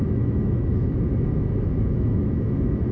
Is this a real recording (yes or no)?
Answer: no